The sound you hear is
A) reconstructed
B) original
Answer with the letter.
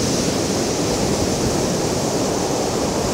B